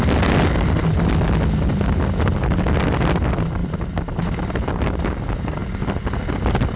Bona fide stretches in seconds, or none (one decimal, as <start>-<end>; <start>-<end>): 0.0-6.8